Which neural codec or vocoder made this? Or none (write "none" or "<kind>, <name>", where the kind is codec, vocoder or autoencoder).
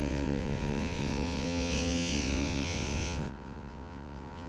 vocoder, WaveNeXt